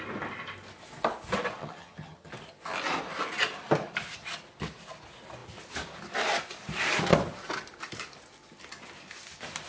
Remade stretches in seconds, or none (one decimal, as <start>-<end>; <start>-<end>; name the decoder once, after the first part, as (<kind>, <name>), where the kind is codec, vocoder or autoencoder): 1.6-2.3 (vocoder, HiFi-GAN)